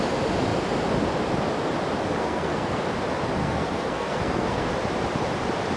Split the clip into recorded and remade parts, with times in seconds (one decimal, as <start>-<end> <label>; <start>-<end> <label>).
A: 0.0-2.2 recorded; 2.2-2.8 remade; 2.8-3.4 recorded; 3.4-4.7 remade; 4.7-5.8 recorded